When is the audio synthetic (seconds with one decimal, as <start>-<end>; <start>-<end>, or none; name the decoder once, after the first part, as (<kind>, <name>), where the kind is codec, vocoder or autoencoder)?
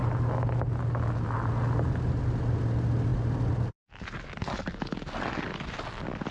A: none